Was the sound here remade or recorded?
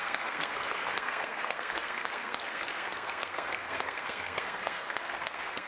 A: remade